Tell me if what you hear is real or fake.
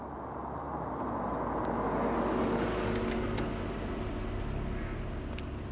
real